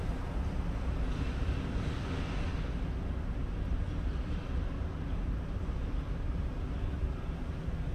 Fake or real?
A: real